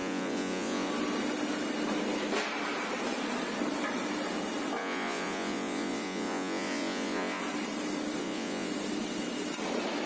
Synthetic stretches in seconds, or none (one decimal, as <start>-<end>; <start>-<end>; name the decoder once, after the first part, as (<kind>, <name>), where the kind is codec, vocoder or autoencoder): 0.0-0.9 (vocoder, Vocos); 4.8-7.4; 8.2-8.7